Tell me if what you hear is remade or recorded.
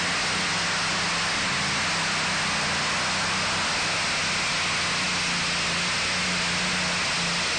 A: recorded